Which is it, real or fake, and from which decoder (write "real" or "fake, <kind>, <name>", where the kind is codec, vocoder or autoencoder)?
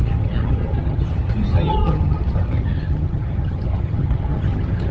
fake, vocoder, HiFi-GAN